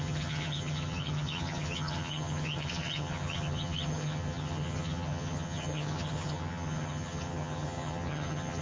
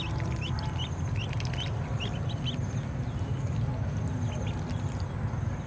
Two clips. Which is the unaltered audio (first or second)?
second